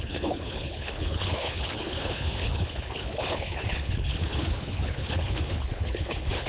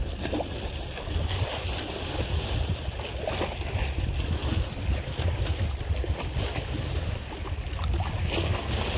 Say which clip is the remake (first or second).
first